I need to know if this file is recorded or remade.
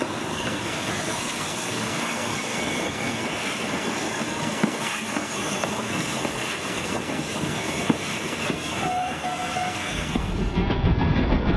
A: remade